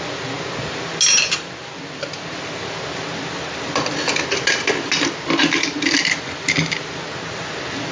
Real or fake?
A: real